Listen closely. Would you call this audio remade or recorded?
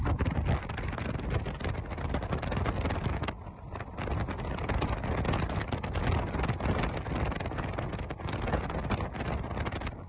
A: recorded